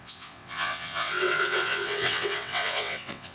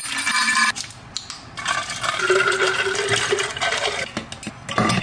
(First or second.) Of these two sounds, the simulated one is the first